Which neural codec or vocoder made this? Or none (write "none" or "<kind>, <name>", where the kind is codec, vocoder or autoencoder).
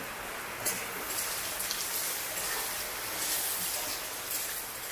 none